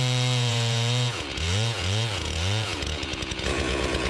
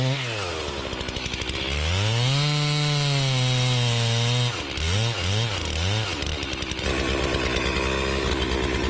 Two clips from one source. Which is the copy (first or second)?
first